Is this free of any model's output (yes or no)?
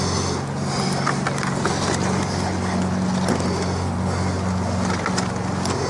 yes